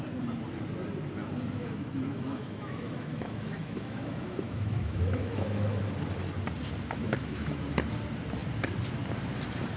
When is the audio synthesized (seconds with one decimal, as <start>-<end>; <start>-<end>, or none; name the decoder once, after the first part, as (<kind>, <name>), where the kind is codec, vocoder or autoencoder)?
1.6-5.8 (autoencoder, DAC-VAE); 7.0-7.6